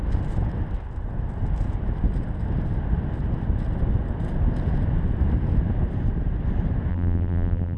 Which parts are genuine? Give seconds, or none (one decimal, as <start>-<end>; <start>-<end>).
0.0-6.9